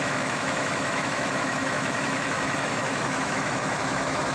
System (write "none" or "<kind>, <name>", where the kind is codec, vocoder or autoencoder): autoencoder, DAC-VAE